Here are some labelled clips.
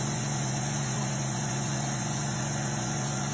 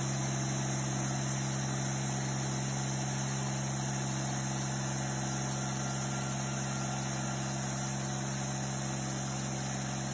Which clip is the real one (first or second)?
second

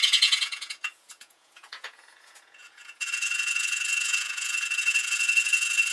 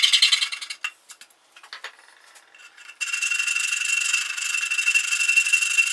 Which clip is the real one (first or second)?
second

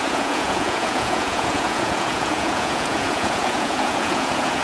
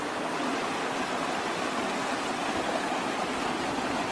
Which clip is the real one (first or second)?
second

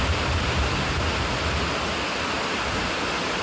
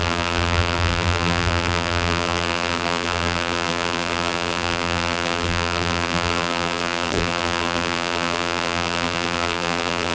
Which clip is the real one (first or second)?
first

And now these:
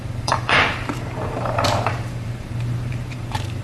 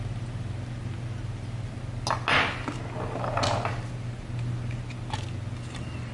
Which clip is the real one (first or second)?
second